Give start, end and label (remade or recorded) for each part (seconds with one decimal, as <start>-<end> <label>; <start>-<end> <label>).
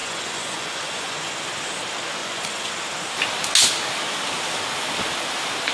0.0-1.4 remade; 1.4-2.2 recorded; 2.2-2.7 remade; 2.7-5.7 recorded